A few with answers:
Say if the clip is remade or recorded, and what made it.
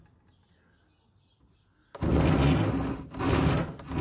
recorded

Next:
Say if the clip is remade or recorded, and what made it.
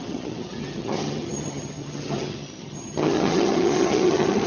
remade, vocoder, HiFi-GAN